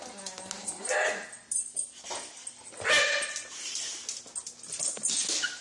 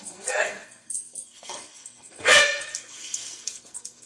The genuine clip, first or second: first